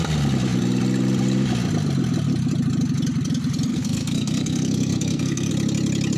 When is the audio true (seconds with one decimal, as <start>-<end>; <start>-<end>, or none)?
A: 0.0-3.7; 5.5-6.2